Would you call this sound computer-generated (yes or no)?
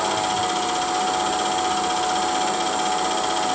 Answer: no